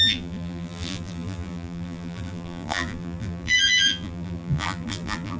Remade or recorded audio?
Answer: remade